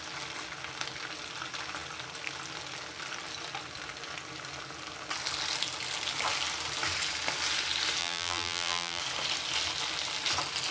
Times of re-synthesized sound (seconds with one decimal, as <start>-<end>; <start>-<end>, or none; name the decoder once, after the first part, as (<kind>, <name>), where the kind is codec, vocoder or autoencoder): 8.0-9.0 (vocoder, BigVGAN v2)